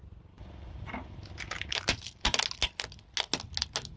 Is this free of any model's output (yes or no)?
yes